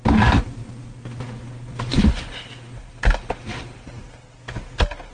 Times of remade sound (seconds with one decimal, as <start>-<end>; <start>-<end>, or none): none